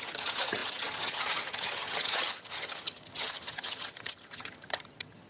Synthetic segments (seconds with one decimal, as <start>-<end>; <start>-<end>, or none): 0.0-5.3